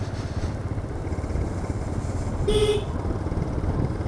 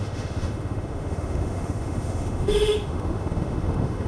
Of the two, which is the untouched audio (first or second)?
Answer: first